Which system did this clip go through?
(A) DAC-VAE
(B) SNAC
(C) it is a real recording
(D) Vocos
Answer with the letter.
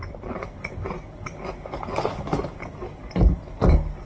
C